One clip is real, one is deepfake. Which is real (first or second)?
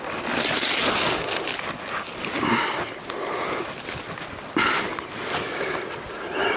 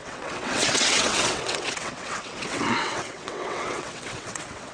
first